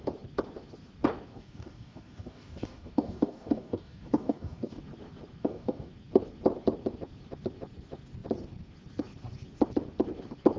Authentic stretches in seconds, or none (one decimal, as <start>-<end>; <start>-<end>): 0.0-1.3; 4.8-5.4; 5.9-10.6